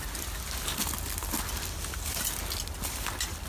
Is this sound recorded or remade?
recorded